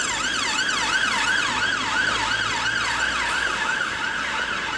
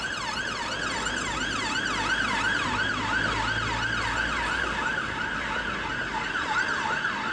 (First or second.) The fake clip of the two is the first